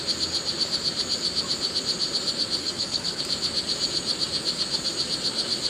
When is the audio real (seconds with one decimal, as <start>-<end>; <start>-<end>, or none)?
0.0-2.6; 3.2-5.7